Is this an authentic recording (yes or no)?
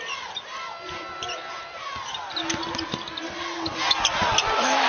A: yes